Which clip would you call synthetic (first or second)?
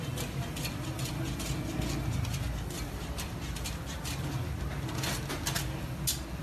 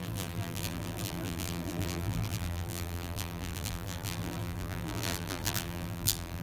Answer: second